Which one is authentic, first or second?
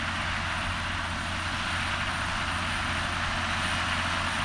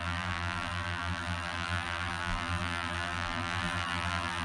first